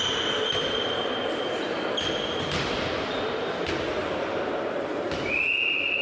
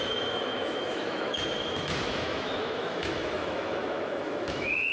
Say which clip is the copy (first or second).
second